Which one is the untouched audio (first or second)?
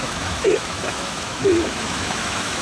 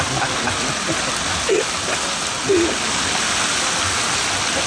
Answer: second